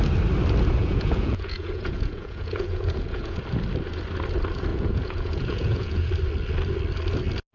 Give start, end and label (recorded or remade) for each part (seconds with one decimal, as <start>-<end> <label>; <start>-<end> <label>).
0.0-0.8 recorded; 0.8-3.4 remade; 3.4-4.7 recorded; 4.7-6.1 remade; 6.1-7.5 recorded